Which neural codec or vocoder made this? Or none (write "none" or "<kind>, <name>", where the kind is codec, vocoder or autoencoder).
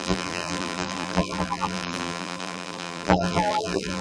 vocoder, BigVGAN v2